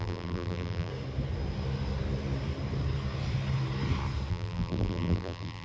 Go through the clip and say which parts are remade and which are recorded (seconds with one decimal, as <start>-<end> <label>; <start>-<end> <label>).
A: 0.0-0.9 remade; 0.9-4.3 recorded; 4.3-5.6 remade